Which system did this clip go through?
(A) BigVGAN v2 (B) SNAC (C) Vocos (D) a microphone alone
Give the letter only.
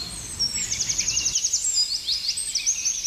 D